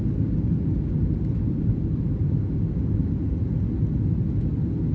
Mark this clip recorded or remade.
recorded